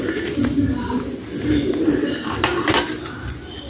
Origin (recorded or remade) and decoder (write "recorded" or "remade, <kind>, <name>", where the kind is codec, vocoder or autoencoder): recorded